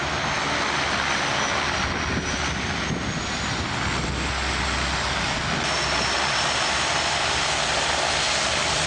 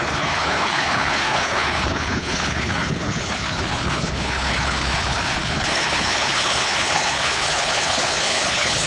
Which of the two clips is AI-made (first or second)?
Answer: second